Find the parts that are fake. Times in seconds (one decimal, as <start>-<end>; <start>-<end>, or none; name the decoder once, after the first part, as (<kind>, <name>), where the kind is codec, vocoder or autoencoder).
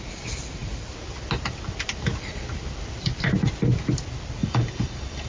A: 4.4-5.3 (vocoder, BigVGAN v2)